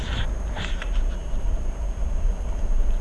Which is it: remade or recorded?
remade